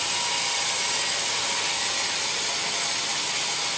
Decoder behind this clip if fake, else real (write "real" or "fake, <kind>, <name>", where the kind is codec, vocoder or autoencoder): real